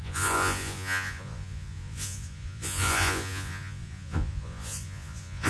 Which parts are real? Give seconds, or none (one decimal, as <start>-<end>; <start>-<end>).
none